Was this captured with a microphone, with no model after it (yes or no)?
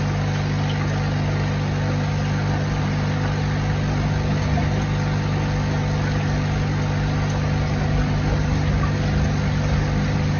yes